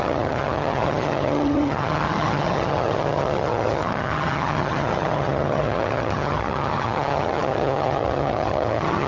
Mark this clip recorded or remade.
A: remade